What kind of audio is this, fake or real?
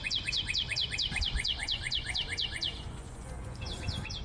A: fake